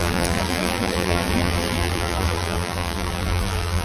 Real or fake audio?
fake